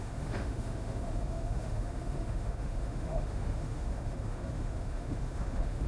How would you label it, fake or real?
fake